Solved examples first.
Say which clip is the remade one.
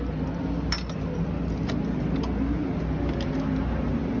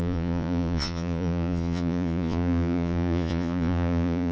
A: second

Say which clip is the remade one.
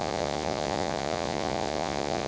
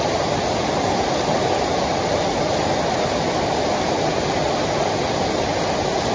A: first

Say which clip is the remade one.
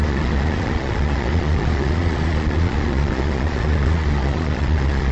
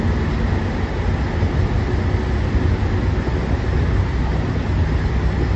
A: first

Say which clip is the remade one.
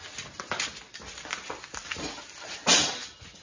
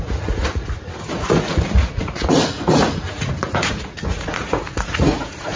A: second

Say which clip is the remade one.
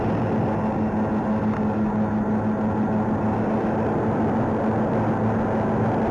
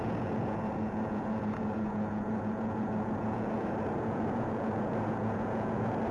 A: second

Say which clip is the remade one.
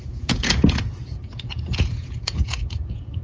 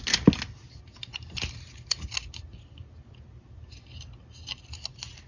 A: first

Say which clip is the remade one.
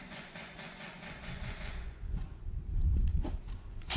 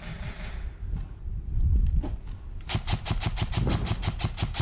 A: first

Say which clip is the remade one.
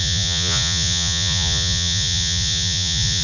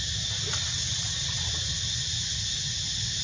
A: first